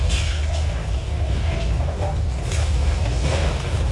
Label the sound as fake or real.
fake